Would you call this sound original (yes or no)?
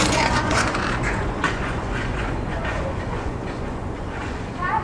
no